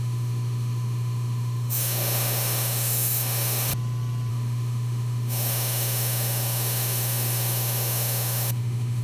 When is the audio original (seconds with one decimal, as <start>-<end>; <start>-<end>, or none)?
3.7-4.3